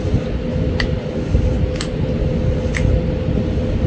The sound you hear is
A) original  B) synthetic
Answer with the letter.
A